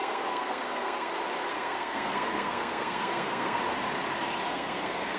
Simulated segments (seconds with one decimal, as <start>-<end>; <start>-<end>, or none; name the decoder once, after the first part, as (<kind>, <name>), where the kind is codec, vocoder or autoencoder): 0.0-1.1 (codec, SNAC); 1.5-3.6; 4.5-5.2